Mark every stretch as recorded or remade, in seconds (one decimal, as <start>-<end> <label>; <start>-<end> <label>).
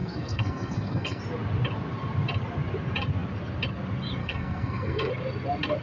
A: 0.0-1.2 remade; 1.2-4.2 recorded; 4.2-5.1 remade; 5.1-5.8 recorded